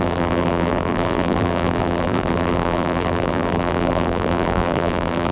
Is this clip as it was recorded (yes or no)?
no